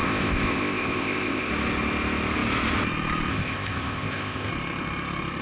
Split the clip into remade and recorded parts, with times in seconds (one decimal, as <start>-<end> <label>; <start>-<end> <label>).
0.0-1.5 remade; 1.5-3.3 recorded; 3.3-4.5 remade; 4.5-5.4 recorded